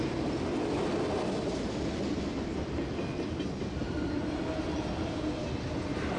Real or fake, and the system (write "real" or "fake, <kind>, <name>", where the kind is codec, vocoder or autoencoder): real